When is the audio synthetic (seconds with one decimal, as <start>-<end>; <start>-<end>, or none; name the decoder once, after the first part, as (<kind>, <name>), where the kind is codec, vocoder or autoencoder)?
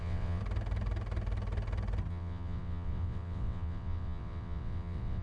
0.0-0.4 (vocoder, WaveNeXt); 2.1-5.2